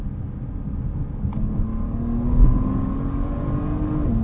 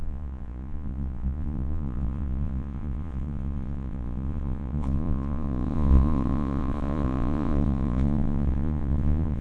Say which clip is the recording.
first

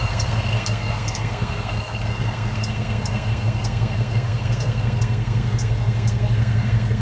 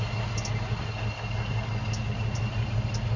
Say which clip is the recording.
second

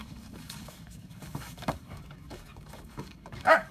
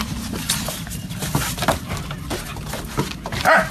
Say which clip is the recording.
second